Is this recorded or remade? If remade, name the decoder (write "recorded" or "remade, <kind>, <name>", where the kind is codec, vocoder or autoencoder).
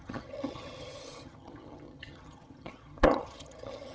remade, vocoder, HiFi-GAN